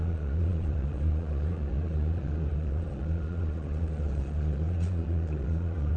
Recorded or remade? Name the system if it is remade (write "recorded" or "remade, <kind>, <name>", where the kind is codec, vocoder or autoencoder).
remade, vocoder, Vocos